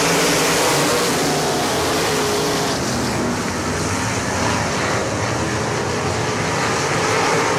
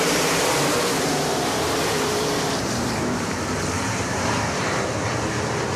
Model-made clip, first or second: second